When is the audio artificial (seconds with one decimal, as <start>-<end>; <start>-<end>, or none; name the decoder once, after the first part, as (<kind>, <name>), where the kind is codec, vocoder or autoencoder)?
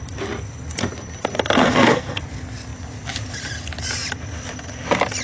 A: 1.6-2.2 (codec, SNAC)